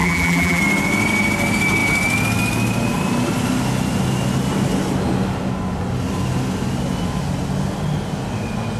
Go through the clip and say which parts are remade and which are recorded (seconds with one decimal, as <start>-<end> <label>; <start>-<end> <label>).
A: 0.0-0.6 remade; 0.6-8.8 recorded